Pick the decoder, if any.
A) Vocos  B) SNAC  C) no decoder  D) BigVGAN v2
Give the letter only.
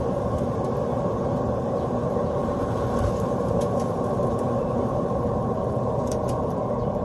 D